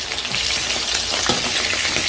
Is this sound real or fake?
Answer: real